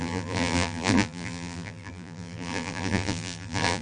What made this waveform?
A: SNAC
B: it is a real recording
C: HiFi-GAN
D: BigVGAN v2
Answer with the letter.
D